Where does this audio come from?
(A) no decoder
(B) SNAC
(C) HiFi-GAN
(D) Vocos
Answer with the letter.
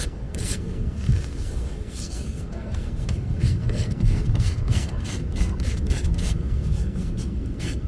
B